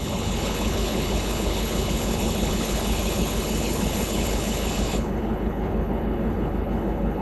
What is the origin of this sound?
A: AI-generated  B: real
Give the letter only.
A